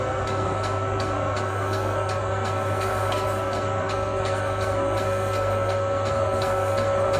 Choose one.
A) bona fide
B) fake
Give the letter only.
B